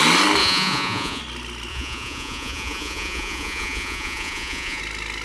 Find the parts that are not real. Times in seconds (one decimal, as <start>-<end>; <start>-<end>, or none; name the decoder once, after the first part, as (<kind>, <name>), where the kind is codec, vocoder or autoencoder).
0.4-1.2 (vocoder, Vocos); 1.7-4.8